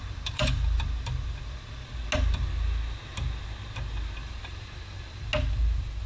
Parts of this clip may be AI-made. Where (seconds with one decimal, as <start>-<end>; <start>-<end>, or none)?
0.0-1.9; 4.2-5.3